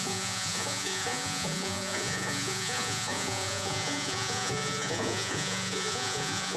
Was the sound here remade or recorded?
remade